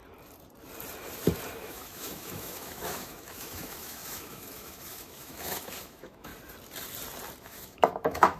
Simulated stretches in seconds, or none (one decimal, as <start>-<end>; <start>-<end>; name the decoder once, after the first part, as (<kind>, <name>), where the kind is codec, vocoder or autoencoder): 1.5-6.3 (autoencoder, DAC-VAE); 7.4-8.4